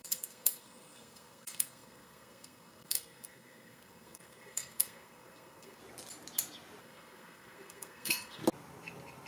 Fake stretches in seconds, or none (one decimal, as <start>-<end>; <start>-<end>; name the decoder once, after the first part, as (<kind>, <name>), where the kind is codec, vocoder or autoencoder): 0.0-5.8 (codec, SNAC); 6.8-8.4

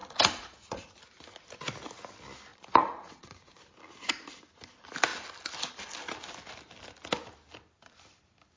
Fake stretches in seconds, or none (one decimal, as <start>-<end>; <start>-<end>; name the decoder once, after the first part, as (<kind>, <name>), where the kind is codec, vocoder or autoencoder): 0.0-1.0 (vocoder, Vocos); 2.5-3.6

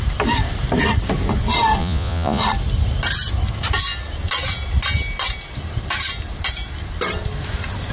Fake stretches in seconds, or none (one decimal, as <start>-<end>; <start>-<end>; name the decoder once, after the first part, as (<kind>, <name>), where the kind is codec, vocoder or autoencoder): 1.8-2.4 (vocoder, Vocos)

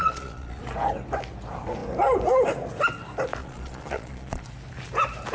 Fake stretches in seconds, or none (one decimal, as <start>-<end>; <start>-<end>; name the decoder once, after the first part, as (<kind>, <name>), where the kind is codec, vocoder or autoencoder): 0.0-0.6 (vocoder, Vocos); 3.4-4.5